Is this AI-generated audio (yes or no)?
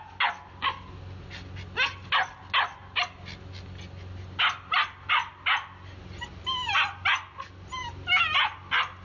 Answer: no